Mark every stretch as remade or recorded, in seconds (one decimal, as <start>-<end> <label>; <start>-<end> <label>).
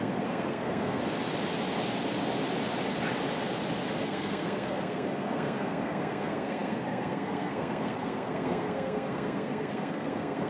0.0-1.0 remade; 1.0-4.0 recorded; 4.0-10.5 remade